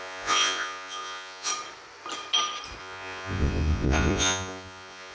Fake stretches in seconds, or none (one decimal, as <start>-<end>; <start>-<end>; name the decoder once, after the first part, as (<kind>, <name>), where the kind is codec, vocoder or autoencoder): 0.0-1.5 (vocoder, Vocos); 2.8-5.1